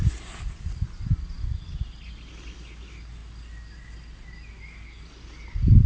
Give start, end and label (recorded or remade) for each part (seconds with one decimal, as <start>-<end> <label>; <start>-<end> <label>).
0.0-5.9 recorded